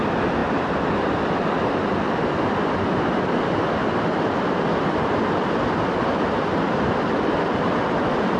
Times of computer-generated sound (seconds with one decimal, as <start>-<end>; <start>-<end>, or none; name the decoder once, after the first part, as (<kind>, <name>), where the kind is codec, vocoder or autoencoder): 0.4-1.2 (vocoder, BigVGAN v2); 4.7-8.0